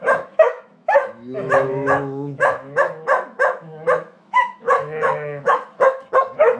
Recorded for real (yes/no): no